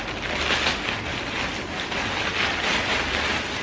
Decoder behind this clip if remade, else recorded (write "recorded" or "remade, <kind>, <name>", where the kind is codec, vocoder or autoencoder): recorded